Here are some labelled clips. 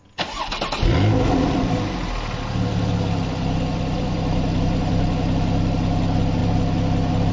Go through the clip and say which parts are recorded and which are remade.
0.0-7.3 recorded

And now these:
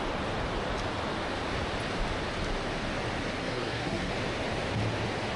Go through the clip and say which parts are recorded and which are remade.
0.0-3.4 recorded; 3.4-4.1 remade; 4.1-5.4 recorded